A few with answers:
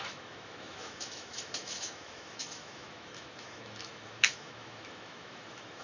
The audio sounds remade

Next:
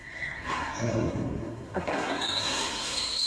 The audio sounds remade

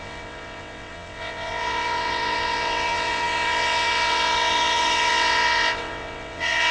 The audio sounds remade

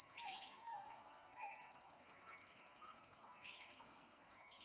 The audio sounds remade